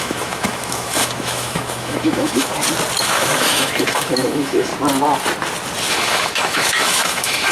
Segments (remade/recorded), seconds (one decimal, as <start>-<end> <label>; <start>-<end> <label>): 0.0-2.5 remade; 2.5-3.0 recorded; 3.0-4.7 remade; 4.7-5.9 recorded; 5.9-7.5 remade